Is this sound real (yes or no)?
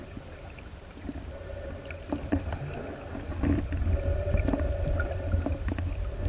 yes